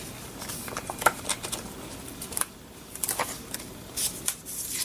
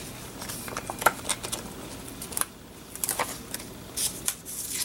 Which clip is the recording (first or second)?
second